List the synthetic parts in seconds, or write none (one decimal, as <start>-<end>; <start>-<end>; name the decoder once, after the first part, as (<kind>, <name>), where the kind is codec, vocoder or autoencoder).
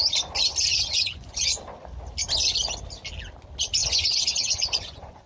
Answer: 0.7-1.6 (vocoder, Vocos); 3.8-5.3